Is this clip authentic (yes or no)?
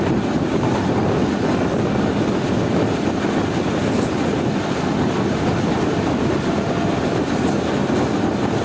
yes